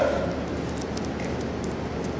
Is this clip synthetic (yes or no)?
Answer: no